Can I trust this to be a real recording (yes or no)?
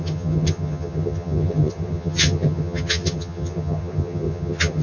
no